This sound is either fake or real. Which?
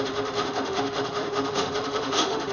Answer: fake